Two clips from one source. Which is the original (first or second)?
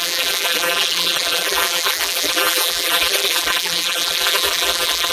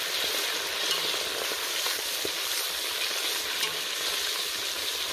second